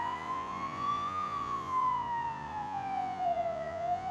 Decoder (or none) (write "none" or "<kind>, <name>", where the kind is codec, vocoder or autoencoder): vocoder, Vocos